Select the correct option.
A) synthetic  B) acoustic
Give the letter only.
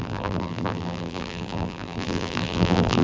A